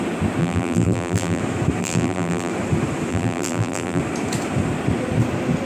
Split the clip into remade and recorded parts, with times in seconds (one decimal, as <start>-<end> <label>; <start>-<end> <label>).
0.0-0.4 recorded; 0.4-1.4 remade; 1.4-1.8 recorded; 1.8-2.5 remade; 2.5-3.1 recorded; 3.1-4.0 remade; 4.0-5.7 recorded